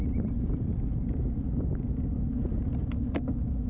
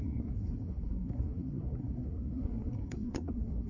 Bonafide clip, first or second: first